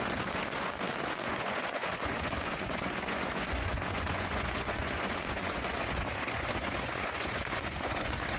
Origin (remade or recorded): remade